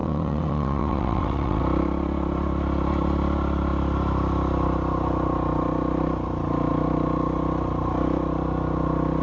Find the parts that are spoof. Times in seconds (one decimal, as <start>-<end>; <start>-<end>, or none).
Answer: 0.0-1.6